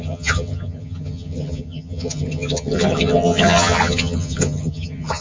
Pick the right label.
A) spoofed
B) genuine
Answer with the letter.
A